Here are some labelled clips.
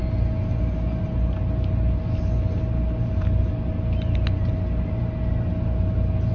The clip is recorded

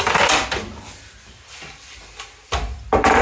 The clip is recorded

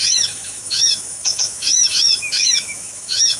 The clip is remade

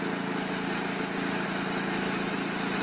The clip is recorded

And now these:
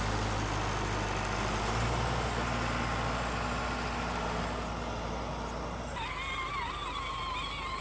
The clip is recorded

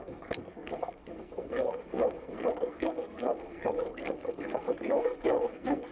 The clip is remade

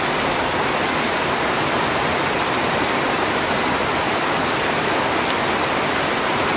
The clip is recorded